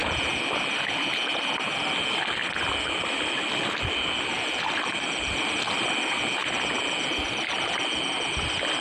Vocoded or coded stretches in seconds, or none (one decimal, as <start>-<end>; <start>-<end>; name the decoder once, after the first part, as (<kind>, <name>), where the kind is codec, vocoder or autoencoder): none